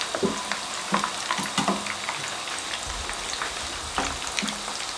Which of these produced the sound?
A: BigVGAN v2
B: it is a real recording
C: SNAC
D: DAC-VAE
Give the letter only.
B